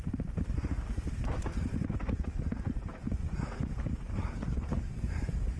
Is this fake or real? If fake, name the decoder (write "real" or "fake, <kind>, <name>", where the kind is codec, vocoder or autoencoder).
real